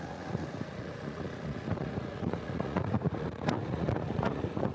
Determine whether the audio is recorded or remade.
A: remade